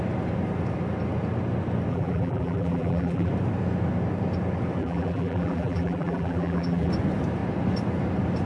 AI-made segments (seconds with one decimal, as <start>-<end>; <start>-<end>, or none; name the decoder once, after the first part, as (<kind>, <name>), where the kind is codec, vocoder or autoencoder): 1.9-3.3 (vocoder, BigVGAN v2); 4.8-6.9